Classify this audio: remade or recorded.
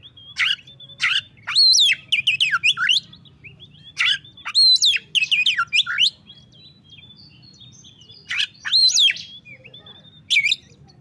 recorded